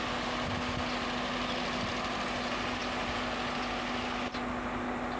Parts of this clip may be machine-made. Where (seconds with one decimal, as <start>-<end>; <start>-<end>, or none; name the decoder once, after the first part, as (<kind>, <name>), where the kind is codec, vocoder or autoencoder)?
none